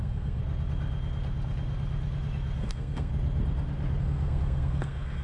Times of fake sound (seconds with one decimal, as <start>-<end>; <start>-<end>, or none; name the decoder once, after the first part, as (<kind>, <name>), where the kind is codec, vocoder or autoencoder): 0.0-0.4 (codec, SNAC); 2.6-3.1; 4.0-5.2